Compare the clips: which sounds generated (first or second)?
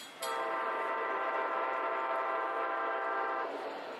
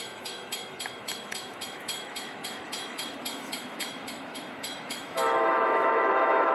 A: second